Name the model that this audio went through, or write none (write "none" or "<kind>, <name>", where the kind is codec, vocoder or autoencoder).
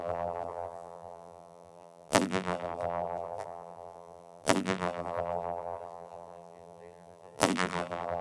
vocoder, BigVGAN v2